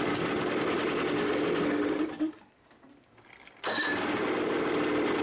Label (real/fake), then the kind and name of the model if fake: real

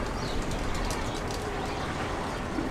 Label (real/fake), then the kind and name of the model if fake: real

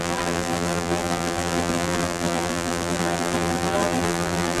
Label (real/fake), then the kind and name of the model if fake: fake, vocoder, BigVGAN v2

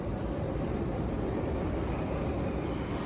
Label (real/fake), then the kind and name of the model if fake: fake, vocoder, BigVGAN v2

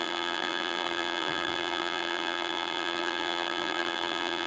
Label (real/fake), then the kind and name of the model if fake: fake, vocoder, BigVGAN v2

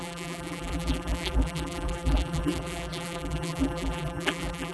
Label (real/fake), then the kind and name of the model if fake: fake, vocoder, BigVGAN v2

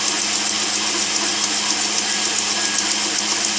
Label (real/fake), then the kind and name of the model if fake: real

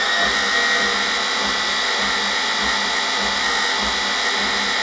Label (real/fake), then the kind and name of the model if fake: real